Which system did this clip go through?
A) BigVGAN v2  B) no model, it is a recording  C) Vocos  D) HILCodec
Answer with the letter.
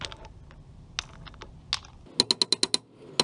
B